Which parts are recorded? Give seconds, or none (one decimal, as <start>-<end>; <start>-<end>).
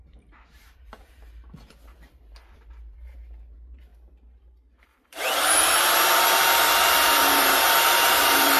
none